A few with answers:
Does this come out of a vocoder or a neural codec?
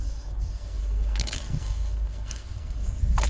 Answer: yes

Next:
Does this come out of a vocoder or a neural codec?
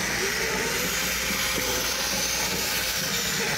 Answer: no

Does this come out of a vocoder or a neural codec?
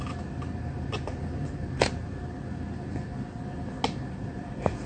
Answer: no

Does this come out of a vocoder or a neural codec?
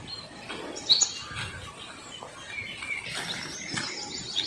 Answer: no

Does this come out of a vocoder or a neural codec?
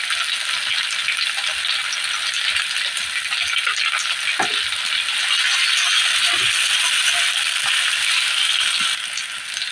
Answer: no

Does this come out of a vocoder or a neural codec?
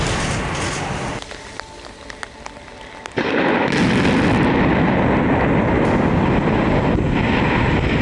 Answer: no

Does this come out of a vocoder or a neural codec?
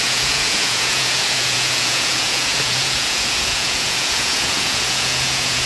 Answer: yes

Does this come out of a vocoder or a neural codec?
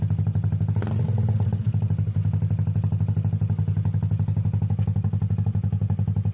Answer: no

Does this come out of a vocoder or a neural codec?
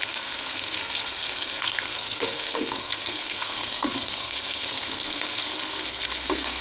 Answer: yes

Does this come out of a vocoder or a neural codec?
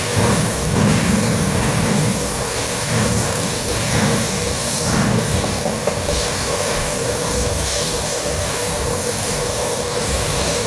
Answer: yes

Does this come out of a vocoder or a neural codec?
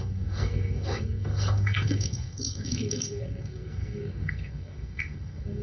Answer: yes